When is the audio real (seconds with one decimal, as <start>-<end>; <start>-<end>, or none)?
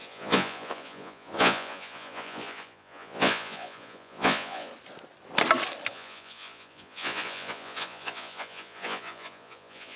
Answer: 4.7-5.9